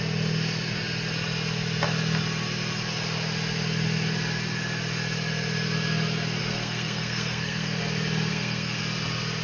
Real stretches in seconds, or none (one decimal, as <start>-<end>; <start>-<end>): 0.0-6.4; 7.8-8.3; 8.8-9.4